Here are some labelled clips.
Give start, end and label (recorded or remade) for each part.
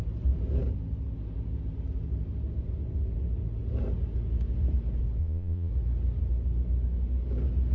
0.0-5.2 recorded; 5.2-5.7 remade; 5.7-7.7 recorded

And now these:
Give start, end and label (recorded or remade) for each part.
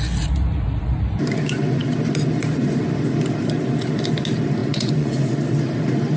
0.0-4.6 recorded; 4.6-5.3 remade; 5.3-6.2 recorded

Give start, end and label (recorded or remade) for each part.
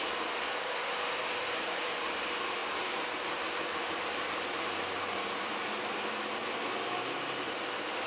0.0-8.1 recorded